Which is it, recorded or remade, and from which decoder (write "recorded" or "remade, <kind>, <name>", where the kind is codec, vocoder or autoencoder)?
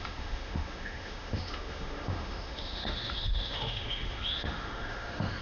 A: remade, autoencoder, DAC-VAE